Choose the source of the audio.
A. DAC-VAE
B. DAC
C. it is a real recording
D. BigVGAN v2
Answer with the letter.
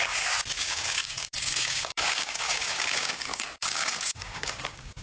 B